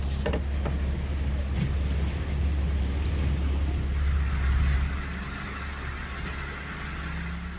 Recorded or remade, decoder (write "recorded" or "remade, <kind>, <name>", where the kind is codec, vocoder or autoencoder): recorded